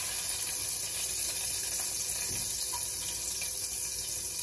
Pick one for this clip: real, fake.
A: real